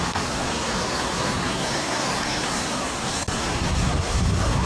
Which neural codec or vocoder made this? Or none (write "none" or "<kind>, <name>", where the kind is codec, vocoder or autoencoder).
codec, SNAC